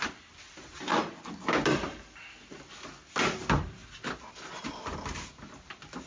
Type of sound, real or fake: real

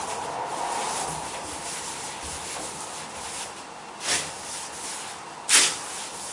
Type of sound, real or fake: real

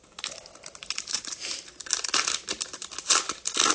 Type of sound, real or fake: real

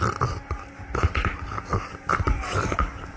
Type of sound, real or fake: real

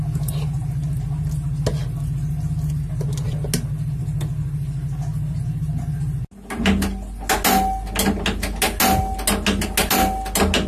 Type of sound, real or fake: real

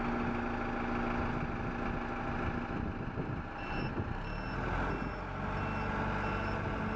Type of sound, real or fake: real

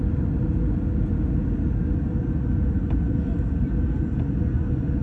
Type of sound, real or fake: real